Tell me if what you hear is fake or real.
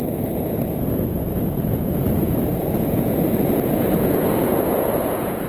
fake